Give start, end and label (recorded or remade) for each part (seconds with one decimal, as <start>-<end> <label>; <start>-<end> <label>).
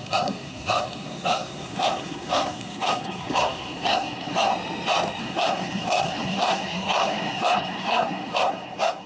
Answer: 0.0-4.5 remade; 4.5-5.2 recorded; 5.2-9.1 remade